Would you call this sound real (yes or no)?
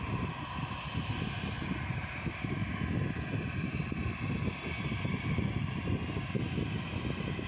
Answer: yes